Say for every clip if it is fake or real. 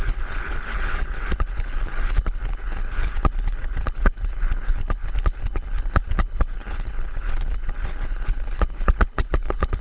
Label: fake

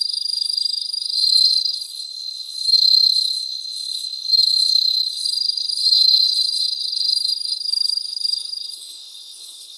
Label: fake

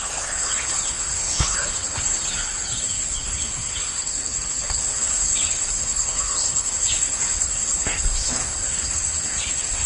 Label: fake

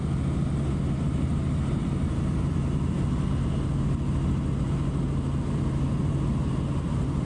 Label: real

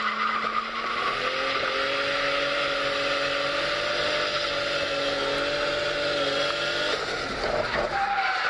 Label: real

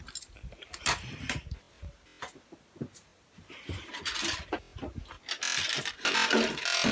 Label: real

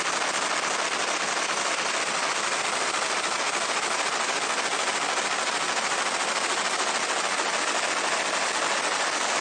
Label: real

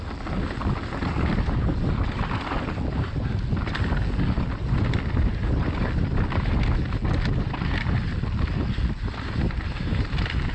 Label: real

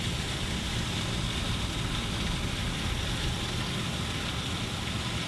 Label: real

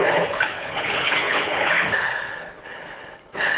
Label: fake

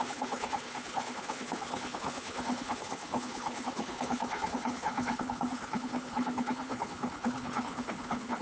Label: fake